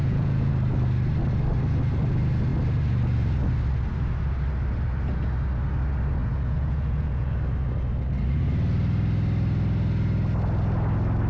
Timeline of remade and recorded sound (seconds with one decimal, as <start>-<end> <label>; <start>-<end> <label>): 0.0-0.5 remade; 0.5-6.2 recorded; 6.2-7.4 remade; 7.4-11.3 recorded